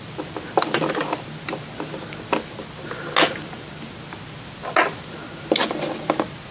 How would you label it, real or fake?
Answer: real